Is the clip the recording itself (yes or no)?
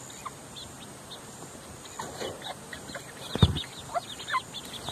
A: yes